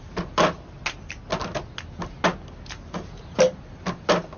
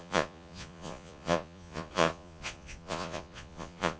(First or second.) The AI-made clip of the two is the second